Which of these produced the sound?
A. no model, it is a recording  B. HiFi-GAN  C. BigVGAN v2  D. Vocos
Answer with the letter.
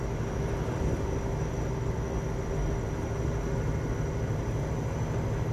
A